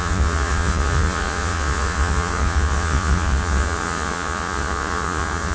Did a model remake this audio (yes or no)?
yes